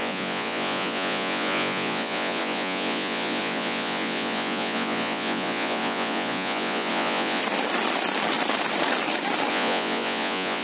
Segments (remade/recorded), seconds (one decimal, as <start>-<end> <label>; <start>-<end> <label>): 0.0-7.4 remade; 7.4-9.5 recorded; 9.5-10.6 remade